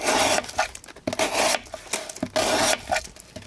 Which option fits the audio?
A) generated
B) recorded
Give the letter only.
B